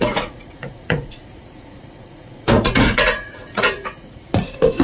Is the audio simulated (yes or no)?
yes